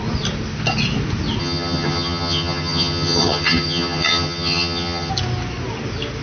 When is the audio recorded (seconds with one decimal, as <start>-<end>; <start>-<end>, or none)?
0.0-1.4; 5.1-6.2